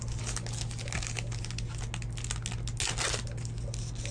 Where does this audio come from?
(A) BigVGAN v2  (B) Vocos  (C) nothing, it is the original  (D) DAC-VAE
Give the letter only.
C